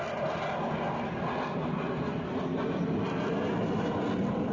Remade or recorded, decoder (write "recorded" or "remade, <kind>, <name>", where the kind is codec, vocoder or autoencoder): recorded